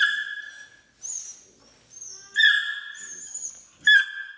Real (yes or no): yes